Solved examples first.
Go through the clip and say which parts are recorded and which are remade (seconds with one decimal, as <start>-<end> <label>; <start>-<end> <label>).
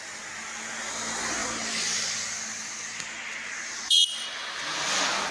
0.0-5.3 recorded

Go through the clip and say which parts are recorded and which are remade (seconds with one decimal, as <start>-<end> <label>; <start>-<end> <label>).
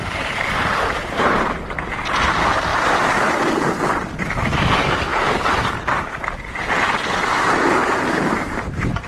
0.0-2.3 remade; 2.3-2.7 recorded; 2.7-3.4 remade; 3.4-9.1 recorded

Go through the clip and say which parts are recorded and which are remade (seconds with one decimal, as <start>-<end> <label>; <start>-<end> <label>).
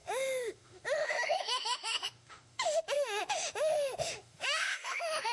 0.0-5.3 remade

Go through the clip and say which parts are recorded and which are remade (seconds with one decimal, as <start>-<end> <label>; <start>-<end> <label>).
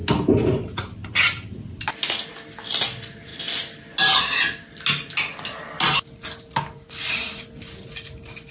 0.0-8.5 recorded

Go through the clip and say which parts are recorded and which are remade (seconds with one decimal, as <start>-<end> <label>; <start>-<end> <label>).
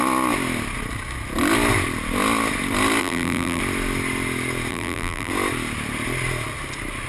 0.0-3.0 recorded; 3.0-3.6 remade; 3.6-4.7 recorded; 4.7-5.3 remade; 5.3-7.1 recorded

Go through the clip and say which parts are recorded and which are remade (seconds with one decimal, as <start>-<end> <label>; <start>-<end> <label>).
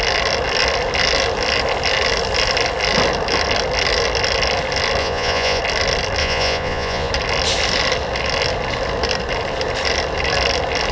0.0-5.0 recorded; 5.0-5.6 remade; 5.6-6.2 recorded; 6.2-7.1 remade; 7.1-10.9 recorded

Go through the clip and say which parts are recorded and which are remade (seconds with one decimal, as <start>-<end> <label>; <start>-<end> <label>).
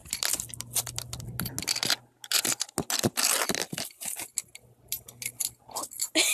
0.0-6.3 recorded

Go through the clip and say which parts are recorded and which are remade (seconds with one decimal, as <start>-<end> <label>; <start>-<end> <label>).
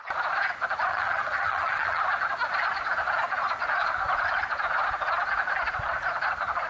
0.0-0.9 recorded; 0.9-2.0 remade; 2.0-6.7 recorded